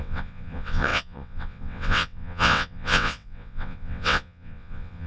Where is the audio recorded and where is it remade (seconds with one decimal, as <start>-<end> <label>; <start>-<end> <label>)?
0.0-5.1 remade